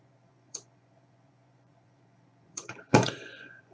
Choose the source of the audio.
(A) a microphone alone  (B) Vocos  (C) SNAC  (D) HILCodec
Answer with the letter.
B